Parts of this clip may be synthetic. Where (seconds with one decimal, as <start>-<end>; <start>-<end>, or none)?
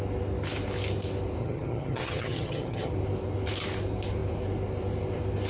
1.4-2.9